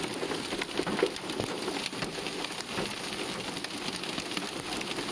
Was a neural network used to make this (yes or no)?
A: no